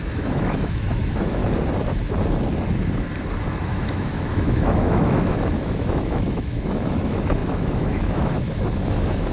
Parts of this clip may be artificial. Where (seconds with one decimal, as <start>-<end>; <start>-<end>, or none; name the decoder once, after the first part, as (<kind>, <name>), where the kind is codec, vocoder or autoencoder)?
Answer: 0.0-1.4 (autoencoder, DAC-VAE); 3.6-9.3